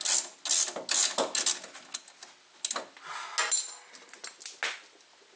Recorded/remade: recorded